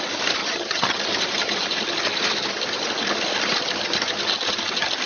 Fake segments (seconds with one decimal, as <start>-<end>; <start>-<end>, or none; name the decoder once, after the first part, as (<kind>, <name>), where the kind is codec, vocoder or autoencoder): 0.4-1.0 (vocoder, HiFi-GAN)